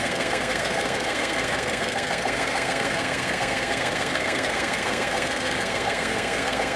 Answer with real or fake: fake